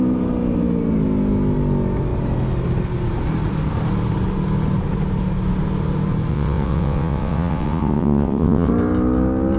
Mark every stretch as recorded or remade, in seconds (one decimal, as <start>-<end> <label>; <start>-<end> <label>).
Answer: 0.0-6.3 recorded; 6.3-8.7 remade; 8.7-9.6 recorded